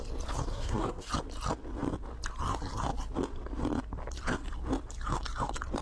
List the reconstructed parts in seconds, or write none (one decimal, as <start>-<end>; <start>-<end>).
0.5-1.1